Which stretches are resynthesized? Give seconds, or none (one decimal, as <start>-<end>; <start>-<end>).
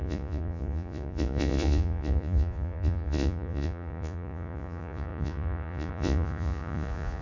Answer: 0.0-7.2